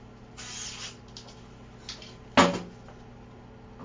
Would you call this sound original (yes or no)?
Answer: yes